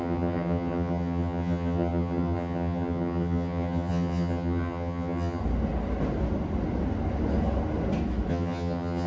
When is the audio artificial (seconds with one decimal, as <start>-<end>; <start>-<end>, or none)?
0.0-5.4; 8.3-9.1